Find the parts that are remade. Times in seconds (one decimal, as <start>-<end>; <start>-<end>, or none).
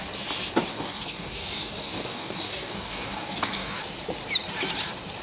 0.7-3.8